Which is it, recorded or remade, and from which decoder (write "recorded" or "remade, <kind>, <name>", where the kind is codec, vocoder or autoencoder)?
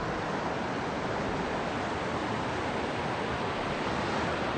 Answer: recorded